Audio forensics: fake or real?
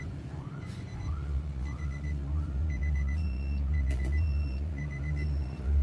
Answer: fake